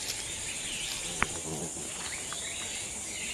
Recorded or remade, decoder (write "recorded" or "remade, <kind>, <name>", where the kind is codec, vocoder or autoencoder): recorded